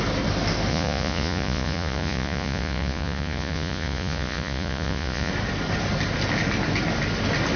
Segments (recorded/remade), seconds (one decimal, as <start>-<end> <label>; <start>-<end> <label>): 0.0-0.7 recorded; 0.7-5.3 remade; 5.3-7.6 recorded